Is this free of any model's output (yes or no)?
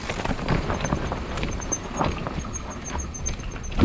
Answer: no